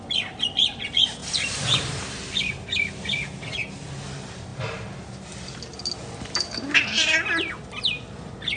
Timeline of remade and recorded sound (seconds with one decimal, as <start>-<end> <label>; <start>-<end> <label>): 0.0-1.2 recorded; 1.2-3.4 remade; 3.4-8.6 recorded